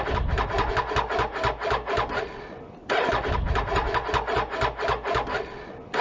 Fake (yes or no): no